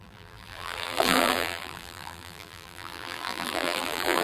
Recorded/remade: remade